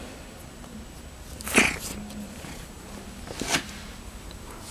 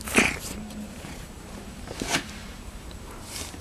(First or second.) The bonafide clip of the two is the first